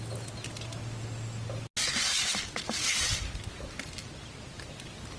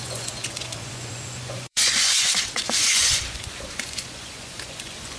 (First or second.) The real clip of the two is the first